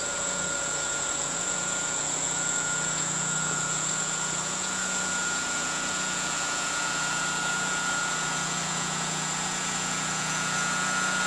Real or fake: fake